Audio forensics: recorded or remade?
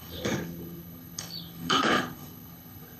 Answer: remade